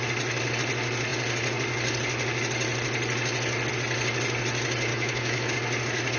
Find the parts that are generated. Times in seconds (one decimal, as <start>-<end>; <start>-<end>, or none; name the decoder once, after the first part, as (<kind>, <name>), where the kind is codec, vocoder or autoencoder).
4.9-5.5 (autoencoder, DAC-VAE)